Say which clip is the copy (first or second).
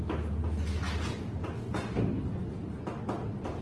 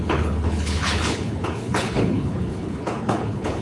second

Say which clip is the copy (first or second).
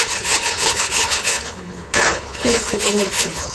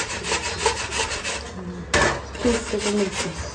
first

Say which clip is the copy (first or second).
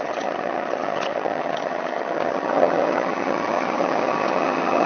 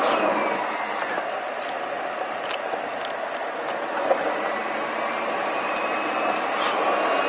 first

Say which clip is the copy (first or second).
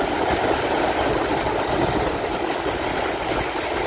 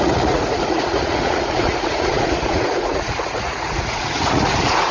second